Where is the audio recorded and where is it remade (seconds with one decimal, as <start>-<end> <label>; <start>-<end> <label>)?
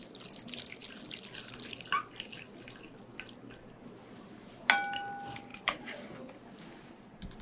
0.0-7.4 recorded